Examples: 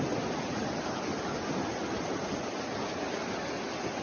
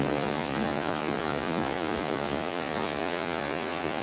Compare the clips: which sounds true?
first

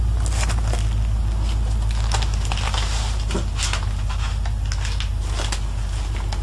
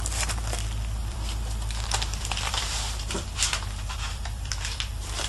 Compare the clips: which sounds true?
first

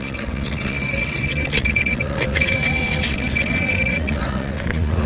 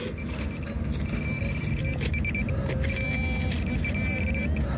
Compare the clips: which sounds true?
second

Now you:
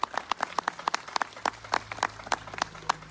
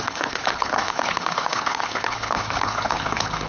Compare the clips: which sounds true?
first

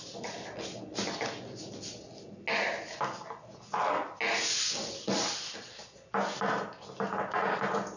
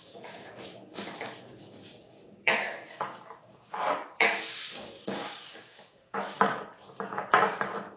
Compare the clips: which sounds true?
first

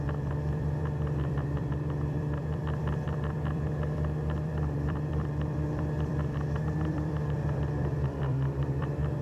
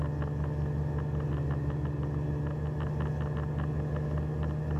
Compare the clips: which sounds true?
second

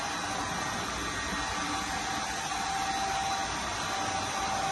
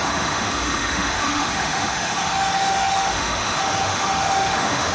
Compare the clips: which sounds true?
first